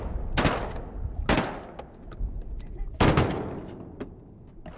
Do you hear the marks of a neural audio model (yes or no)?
no